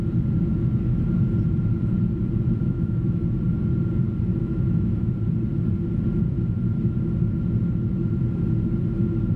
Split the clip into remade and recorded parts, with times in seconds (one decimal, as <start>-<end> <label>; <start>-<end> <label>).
0.0-2.6 recorded; 2.6-3.2 remade; 3.2-4.4 recorded; 4.4-5.1 remade; 5.1-9.4 recorded